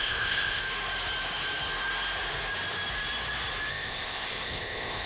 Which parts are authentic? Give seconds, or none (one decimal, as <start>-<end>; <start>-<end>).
0.6-3.7